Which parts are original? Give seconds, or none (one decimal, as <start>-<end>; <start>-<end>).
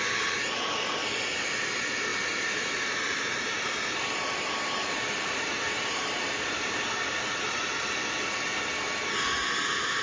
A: 0.0-2.1; 6.8-10.0